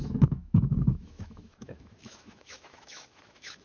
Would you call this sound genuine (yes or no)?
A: no